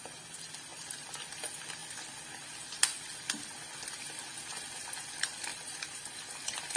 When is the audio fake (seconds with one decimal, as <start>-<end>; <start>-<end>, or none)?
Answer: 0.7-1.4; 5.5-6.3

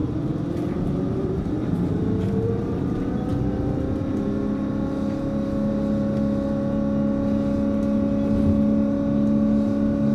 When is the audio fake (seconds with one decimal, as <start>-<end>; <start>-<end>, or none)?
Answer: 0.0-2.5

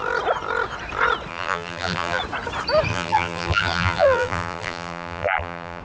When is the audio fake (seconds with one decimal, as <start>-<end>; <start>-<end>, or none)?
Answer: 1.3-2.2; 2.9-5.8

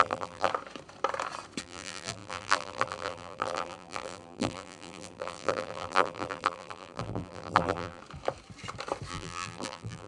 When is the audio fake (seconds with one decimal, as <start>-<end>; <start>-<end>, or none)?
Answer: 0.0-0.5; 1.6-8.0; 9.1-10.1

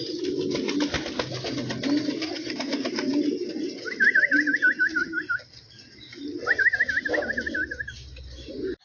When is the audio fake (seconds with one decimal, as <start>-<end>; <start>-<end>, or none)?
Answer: 5.0-6.7

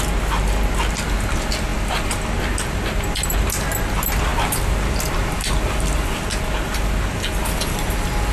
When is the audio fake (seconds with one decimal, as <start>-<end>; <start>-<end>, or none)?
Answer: none

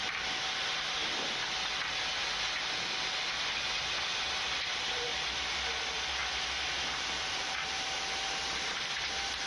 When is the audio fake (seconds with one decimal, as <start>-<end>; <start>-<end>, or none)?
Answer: 0.0-1.0; 4.0-9.5